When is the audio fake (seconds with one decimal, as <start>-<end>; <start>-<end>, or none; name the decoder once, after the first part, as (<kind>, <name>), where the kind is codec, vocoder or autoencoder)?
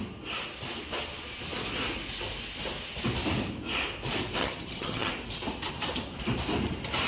4.4-5.1 (vocoder, HiFi-GAN)